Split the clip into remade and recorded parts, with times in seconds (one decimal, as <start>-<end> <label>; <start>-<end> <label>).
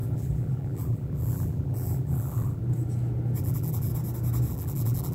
0.0-2.6 remade; 2.6-3.4 recorded; 3.4-3.9 remade; 3.9-4.5 recorded; 4.5-5.1 remade